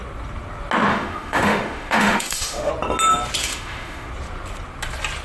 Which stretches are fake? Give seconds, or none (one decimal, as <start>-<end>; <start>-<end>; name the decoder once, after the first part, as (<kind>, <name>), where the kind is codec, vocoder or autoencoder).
0.9-2.7 (autoencoder, DAC-VAE); 3.4-4.1